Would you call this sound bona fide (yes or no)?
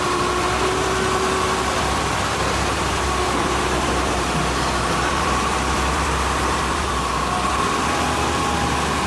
no